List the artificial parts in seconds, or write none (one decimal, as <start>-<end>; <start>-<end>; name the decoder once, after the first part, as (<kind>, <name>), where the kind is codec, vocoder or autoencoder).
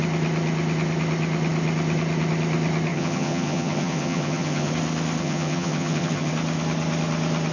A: 2.9-4.7 (vocoder, HiFi-GAN); 5.2-6.3